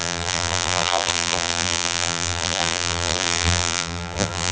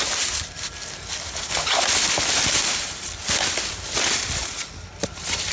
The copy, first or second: first